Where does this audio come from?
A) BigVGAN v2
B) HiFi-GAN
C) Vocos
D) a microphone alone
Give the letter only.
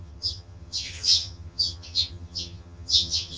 B